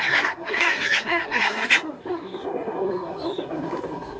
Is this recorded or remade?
remade